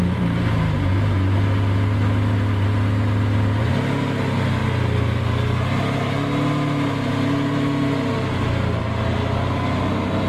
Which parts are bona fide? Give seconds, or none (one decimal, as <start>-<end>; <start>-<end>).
0.0-10.3